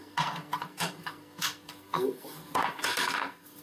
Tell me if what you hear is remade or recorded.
remade